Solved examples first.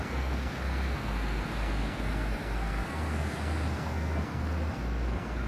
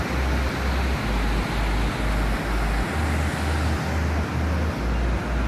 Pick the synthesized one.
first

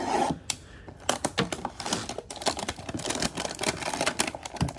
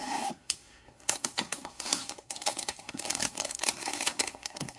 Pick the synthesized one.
second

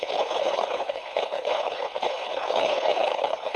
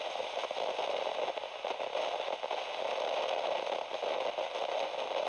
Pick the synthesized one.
first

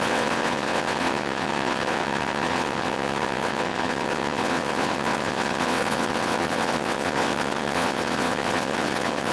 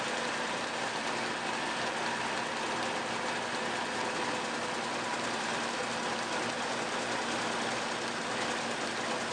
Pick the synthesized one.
first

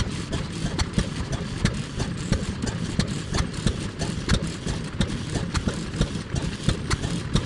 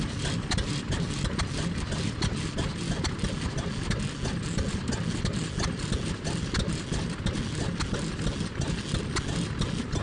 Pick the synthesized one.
first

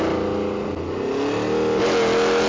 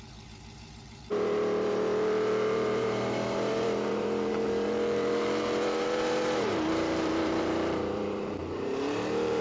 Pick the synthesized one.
second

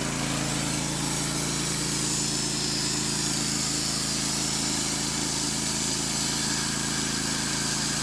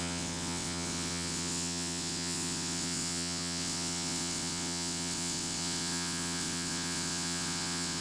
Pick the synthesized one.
second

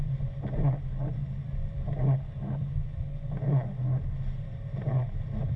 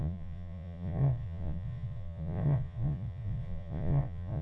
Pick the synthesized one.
second